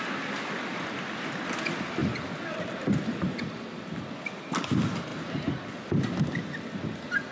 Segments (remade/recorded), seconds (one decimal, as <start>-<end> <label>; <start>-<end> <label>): 0.0-7.3 recorded